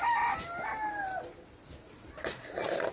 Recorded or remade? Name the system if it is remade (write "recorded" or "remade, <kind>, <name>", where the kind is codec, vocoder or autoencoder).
recorded